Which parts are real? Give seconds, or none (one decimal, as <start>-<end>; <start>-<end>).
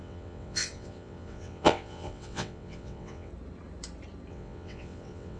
3.3-4.3